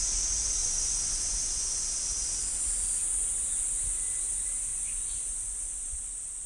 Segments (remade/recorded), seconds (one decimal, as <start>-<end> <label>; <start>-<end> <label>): 0.0-0.6 recorded; 0.6-1.8 remade; 1.8-4.7 recorded; 4.7-6.0 remade; 6.0-6.5 recorded

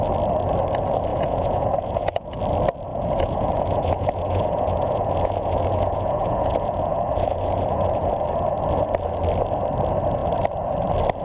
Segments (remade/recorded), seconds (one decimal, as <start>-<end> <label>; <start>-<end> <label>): 0.0-1.1 recorded; 1.1-2.4 remade; 2.4-2.9 recorded; 2.9-8.1 remade; 8.1-11.2 recorded